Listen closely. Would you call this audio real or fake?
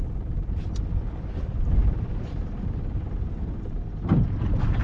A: real